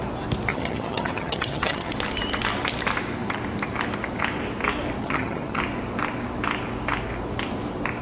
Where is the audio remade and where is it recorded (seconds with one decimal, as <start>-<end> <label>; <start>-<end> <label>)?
0.0-0.5 recorded; 0.5-1.9 remade; 1.9-5.0 recorded; 5.0-5.6 remade; 5.6-8.0 recorded